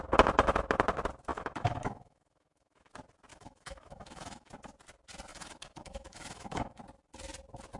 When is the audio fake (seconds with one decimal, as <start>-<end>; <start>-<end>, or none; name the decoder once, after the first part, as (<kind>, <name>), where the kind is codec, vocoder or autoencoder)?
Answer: 1.3-2.9 (autoencoder, DAC-VAE); 3.3-4.5; 5.3-6.8